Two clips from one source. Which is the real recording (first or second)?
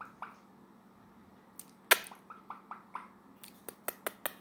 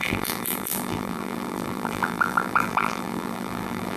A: first